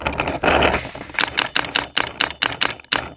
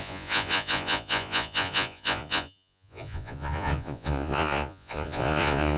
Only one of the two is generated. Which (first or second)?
second